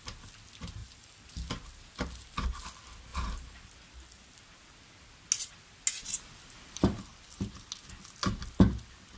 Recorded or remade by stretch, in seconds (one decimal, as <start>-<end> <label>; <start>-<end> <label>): 0.0-0.8 recorded; 0.8-1.3 remade; 1.3-3.1 recorded; 3.1-3.6 remade; 3.6-9.2 recorded